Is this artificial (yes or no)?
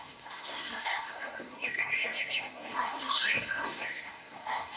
yes